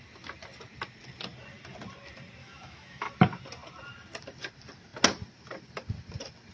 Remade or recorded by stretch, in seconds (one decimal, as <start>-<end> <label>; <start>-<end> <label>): 0.0-2.4 recorded; 2.4-3.1 remade; 3.1-6.5 recorded

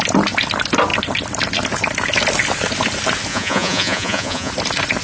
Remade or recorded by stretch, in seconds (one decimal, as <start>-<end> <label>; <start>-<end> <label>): 0.0-3.3 recorded; 3.3-4.5 remade; 4.5-5.0 recorded